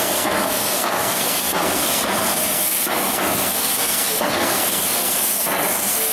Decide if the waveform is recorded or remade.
remade